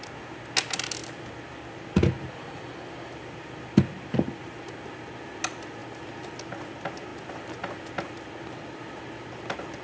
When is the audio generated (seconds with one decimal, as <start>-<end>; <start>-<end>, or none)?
none